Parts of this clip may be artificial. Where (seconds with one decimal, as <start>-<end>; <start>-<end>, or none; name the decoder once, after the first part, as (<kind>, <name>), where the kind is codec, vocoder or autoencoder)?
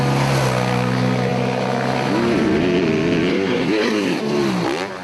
3.3-4.2 (codec, SNAC)